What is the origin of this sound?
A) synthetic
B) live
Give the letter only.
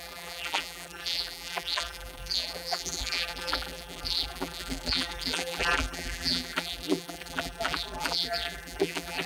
A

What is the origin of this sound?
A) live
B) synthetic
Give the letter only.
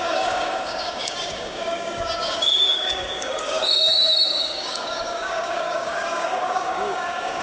B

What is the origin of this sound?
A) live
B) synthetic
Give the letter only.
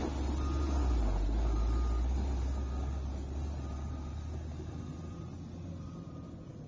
A